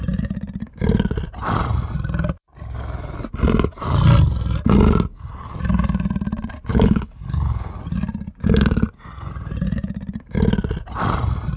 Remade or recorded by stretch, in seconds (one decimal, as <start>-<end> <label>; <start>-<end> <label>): 0.0-6.7 recorded; 6.7-7.7 remade; 7.7-11.6 recorded